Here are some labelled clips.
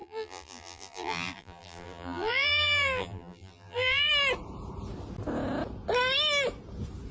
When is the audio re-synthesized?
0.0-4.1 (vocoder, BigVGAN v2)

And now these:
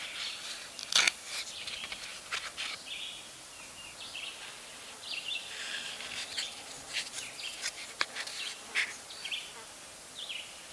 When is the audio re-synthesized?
7.5-9.5 (vocoder, BigVGAN v2)

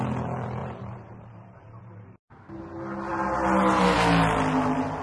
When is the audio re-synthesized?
0.6-2.6 (vocoder, BigVGAN v2)